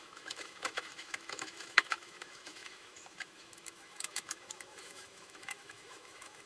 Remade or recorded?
remade